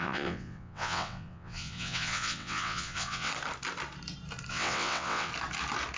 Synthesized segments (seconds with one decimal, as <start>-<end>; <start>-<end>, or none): 0.0-3.3; 4.5-5.3